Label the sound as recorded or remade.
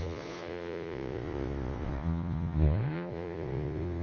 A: remade